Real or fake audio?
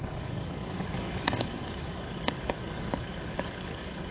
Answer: fake